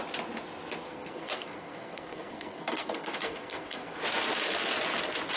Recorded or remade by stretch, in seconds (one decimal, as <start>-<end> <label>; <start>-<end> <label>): 0.0-0.8 recorded; 0.8-4.0 remade; 4.0-5.4 recorded